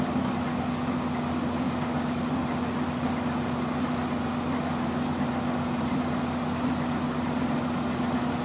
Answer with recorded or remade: recorded